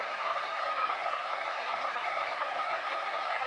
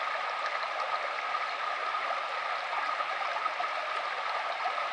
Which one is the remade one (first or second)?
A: first